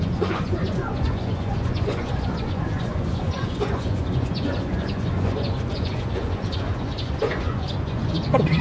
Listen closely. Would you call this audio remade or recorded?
remade